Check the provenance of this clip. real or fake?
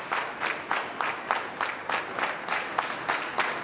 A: real